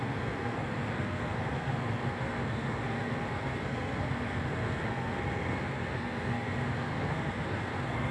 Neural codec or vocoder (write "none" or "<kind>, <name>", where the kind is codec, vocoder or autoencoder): codec, SNAC